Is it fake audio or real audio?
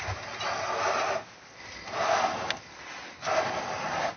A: real